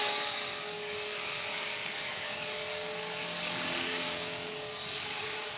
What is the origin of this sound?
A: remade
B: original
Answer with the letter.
A